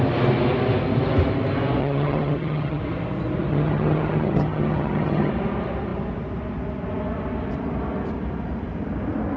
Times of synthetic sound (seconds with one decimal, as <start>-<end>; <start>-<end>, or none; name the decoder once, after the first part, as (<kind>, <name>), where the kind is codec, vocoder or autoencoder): 1.8-2.8 (vocoder, HiFi-GAN); 3.5-5.3